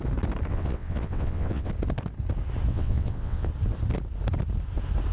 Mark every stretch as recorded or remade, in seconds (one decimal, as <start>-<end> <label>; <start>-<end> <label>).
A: 0.0-0.5 recorded; 0.5-1.7 remade; 1.7-2.7 recorded; 2.7-3.5 remade; 3.5-5.1 recorded